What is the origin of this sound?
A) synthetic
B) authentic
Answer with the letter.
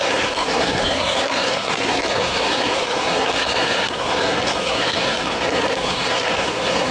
A